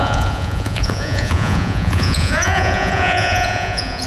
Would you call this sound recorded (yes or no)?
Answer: no